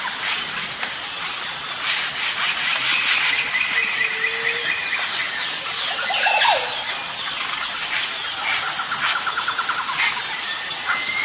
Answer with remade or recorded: recorded